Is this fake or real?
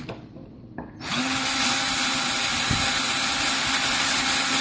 real